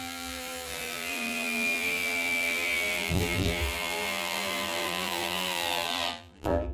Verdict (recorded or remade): remade